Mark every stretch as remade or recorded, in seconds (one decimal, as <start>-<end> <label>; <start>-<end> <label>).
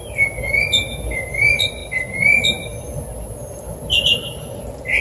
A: 0.0-5.0 recorded